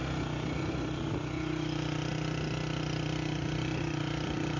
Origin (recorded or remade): recorded